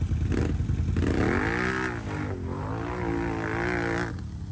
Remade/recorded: recorded